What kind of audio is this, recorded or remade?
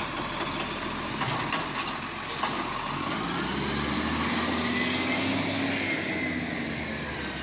recorded